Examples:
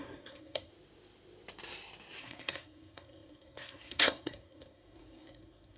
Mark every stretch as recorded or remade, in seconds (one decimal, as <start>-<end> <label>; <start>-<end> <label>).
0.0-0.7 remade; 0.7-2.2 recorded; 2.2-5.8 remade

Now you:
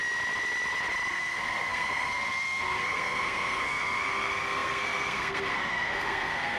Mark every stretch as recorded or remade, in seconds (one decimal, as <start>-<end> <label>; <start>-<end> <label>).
0.0-1.1 recorded; 1.1-6.6 remade

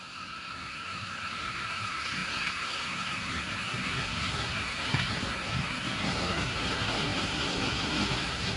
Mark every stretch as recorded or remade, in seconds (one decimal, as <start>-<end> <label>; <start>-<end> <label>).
0.0-8.6 remade